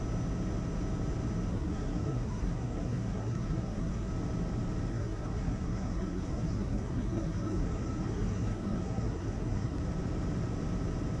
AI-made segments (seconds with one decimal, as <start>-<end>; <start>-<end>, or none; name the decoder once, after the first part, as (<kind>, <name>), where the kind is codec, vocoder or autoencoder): 1.5-4.1 (codec, SNAC); 4.9-9.8